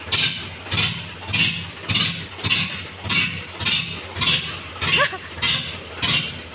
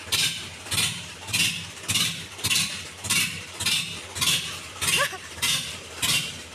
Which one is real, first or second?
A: first